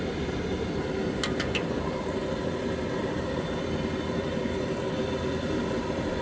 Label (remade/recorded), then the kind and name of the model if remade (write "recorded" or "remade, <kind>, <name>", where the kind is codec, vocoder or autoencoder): recorded